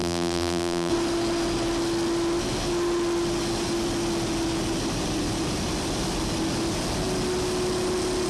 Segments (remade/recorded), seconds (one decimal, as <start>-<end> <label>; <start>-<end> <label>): 0.0-0.9 remade; 0.9-8.3 recorded